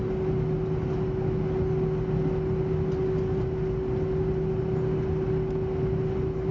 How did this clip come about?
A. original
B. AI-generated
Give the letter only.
A